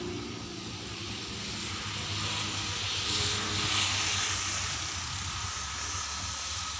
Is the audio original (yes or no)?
yes